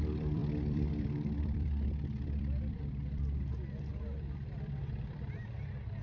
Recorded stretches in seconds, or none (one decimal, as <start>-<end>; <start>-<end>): none